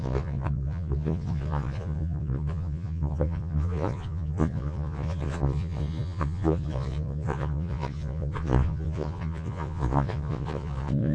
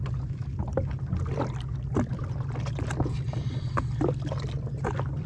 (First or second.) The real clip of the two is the second